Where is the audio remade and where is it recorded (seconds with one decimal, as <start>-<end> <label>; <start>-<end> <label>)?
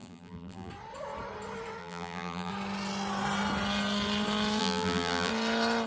0.0-0.7 remade; 0.7-1.8 recorded; 1.8-2.5 remade; 2.5-4.6 recorded; 4.6-5.3 remade; 5.3-5.9 recorded